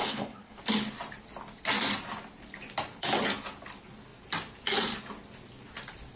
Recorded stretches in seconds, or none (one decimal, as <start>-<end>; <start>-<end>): 0.6-6.2